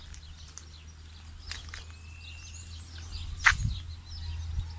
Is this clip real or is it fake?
real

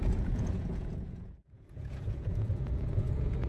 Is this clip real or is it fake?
fake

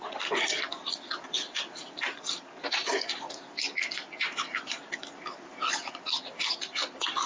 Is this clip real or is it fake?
real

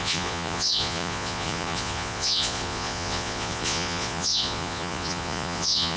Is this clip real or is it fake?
fake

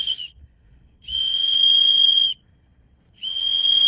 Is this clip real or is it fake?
fake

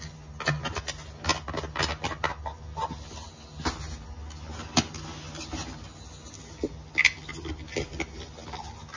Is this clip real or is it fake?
real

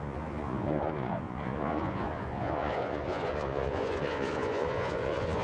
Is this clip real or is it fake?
fake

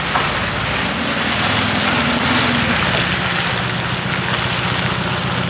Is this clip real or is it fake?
real